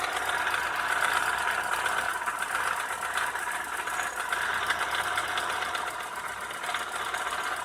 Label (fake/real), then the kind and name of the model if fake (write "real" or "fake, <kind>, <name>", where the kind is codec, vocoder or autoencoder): real